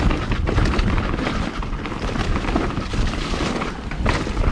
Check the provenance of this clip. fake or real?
real